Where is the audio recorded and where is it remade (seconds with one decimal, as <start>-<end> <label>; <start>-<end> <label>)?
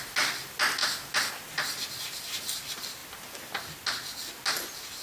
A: 0.0-5.0 recorded